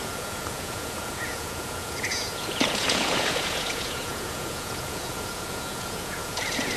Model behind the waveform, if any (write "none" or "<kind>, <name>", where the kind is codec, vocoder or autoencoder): vocoder, Vocos